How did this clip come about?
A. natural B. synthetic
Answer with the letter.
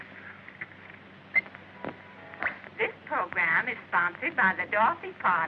A